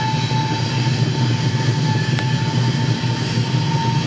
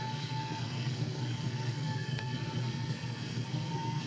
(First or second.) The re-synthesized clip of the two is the second